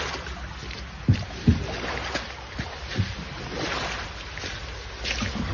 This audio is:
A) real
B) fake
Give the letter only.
A